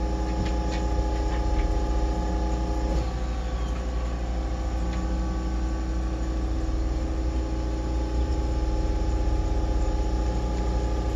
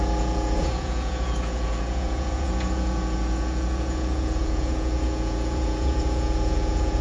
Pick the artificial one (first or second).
second